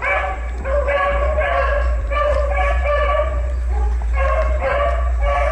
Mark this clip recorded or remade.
remade